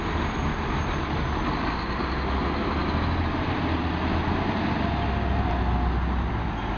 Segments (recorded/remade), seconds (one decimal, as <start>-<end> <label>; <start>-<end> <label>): 0.0-6.8 recorded